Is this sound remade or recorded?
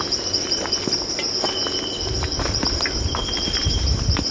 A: recorded